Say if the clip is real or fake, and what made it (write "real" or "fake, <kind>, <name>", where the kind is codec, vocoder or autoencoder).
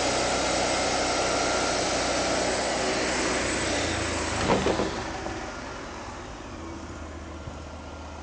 real